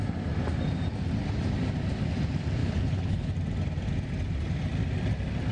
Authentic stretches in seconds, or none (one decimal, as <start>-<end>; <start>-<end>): 0.0-2.6; 3.3-5.5

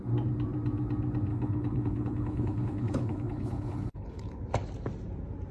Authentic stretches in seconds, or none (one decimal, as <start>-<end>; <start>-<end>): 0.0-1.3; 4.4-5.5

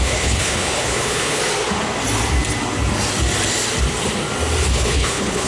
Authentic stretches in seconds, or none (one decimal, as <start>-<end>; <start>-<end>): 1.4-4.7

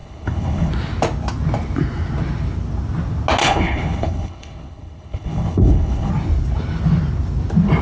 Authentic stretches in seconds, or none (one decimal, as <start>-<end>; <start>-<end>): 0.7-3.4; 6.1-7.8

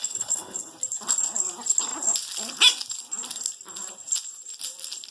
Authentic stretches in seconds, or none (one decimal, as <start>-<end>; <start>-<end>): 0.7-5.1

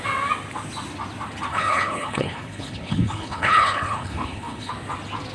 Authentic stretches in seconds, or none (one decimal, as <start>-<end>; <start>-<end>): 0.0-1.5; 4.7-5.3